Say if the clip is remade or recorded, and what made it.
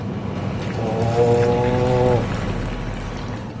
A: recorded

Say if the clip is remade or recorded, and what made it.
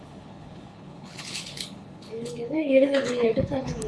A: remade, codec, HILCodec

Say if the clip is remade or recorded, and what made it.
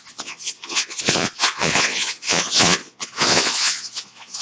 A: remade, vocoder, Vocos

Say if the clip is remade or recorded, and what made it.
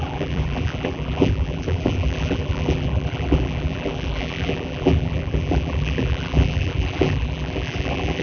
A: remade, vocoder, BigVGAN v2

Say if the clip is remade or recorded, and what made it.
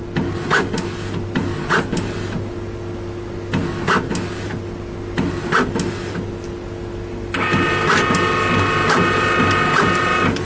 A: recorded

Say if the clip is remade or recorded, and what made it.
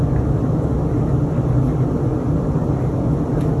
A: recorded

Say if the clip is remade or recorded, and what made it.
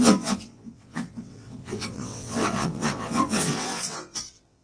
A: remade, vocoder, WaveNeXt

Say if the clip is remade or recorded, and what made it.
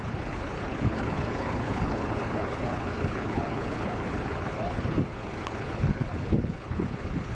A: remade, codec, HILCodec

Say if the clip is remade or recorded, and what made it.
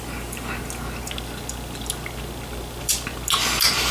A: recorded